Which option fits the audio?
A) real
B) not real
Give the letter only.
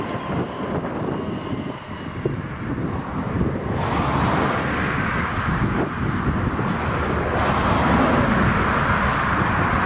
A